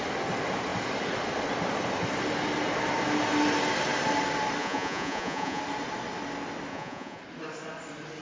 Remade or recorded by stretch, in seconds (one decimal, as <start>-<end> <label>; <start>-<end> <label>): 0.0-4.6 recorded; 4.6-5.6 remade; 5.6-6.7 recorded; 6.7-7.2 remade; 7.2-8.2 recorded